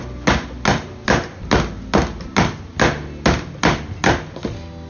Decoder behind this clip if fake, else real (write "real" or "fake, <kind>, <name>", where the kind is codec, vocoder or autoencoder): real